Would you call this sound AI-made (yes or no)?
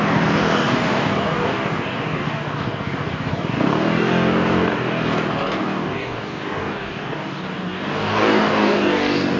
yes